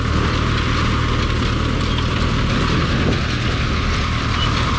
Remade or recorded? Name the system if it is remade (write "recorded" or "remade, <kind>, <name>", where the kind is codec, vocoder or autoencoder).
recorded